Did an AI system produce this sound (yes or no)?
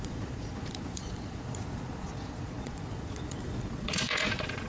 yes